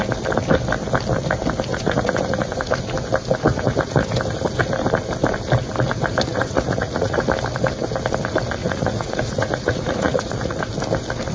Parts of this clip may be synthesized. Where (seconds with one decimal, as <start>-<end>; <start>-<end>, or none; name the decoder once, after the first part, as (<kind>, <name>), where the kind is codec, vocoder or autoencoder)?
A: 1.7-2.8 (vocoder, Vocos); 3.5-4.1; 6.3-7.2; 8.6-10.6